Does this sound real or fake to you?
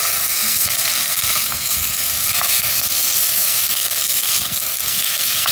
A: fake